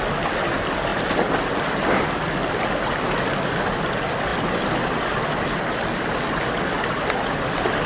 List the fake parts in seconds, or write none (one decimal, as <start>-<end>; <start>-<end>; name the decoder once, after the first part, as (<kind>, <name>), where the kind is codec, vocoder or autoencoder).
none